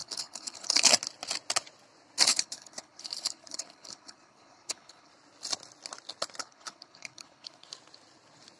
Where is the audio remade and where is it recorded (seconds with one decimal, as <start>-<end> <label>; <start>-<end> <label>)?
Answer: 0.0-0.9 remade; 0.9-2.3 recorded; 2.3-5.1 remade; 5.1-6.4 recorded; 6.4-7.7 remade; 7.7-8.6 recorded